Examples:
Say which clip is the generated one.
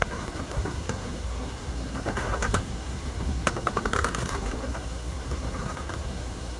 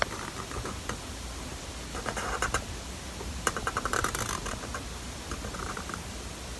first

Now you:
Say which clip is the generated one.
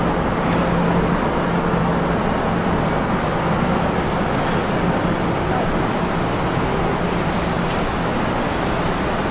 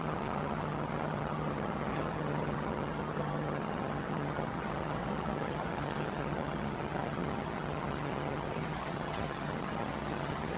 second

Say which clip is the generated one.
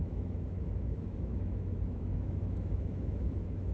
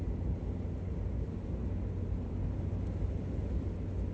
first